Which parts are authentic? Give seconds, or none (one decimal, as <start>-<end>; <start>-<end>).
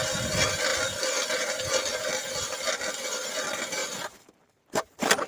3.8-4.6